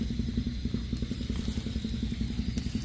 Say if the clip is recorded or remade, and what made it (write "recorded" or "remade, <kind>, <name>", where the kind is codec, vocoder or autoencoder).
recorded